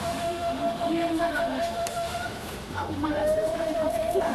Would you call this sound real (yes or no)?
no